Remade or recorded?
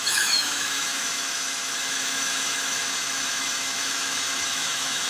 remade